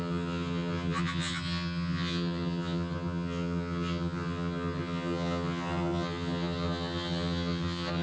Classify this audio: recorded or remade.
remade